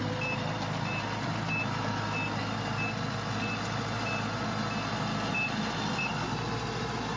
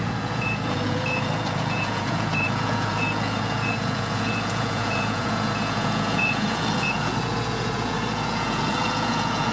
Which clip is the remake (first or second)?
second